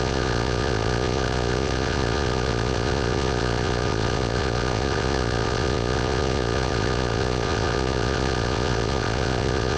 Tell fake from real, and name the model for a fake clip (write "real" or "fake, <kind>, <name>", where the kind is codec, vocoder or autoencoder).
fake, vocoder, Vocos